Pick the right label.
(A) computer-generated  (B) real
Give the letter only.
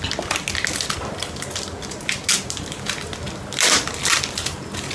B